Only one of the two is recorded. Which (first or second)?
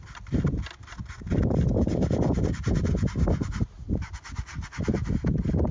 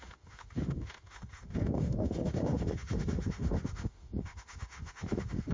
first